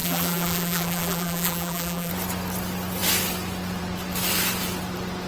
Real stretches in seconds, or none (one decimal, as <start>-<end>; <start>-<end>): 2.1-5.3